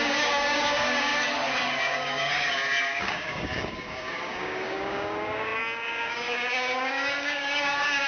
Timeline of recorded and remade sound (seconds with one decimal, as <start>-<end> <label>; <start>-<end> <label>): 0.0-1.1 remade; 1.1-1.8 recorded; 1.8-8.1 remade